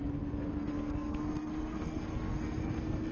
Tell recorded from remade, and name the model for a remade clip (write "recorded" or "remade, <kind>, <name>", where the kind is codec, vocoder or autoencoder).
remade, codec, SNAC